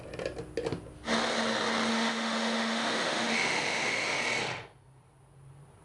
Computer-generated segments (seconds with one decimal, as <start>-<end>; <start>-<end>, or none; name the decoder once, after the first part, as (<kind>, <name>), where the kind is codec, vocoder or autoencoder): 1.9-4.2 (autoencoder, DAC-VAE)